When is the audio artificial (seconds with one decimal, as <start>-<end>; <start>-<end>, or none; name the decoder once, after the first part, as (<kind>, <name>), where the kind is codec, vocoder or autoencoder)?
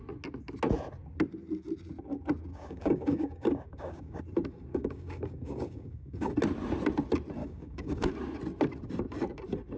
2.5-4.2 (codec, DAC); 4.7-6.3; 7.4-8.1